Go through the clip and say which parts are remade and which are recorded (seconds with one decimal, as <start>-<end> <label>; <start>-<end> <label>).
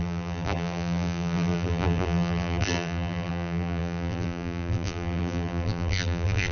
0.0-6.5 remade